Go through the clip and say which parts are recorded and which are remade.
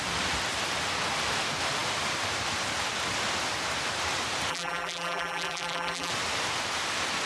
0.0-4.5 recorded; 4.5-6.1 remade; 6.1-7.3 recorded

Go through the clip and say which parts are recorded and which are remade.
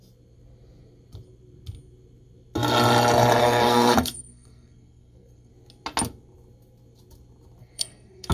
0.0-3.4 recorded; 3.4-5.5 remade; 5.5-7.6 recorded; 7.6-8.3 remade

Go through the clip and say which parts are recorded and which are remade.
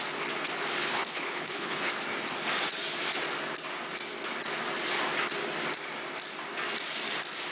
0.0-0.8 recorded; 0.8-1.9 remade; 1.9-7.5 recorded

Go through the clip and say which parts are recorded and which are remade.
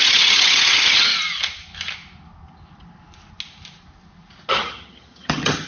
0.0-1.1 remade; 1.1-4.5 recorded; 4.5-5.7 remade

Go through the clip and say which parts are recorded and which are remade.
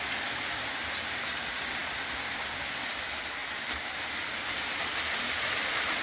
0.0-6.0 recorded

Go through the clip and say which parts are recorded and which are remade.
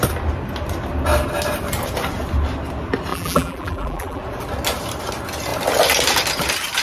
0.0-3.1 recorded; 3.1-4.2 remade; 4.2-6.8 recorded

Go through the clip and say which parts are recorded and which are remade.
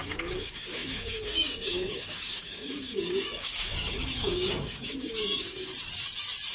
0.0-5.7 remade; 5.7-6.5 recorded